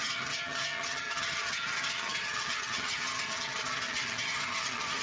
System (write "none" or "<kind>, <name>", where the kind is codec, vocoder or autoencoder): vocoder, HiFi-GAN